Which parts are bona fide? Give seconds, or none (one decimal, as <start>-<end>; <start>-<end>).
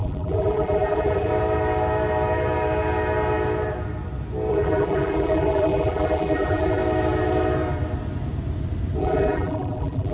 1.3-4.5; 6.8-9.0